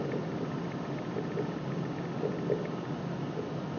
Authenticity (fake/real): real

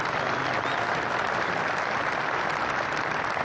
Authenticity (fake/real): real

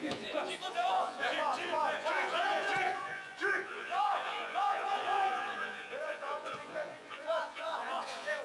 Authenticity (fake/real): fake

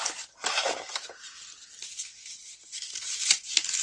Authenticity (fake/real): real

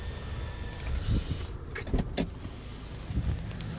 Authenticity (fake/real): real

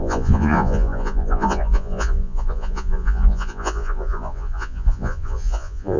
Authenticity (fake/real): fake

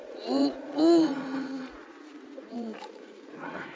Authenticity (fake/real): fake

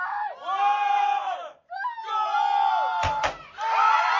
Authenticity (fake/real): real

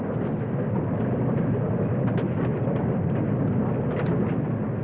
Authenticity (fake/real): real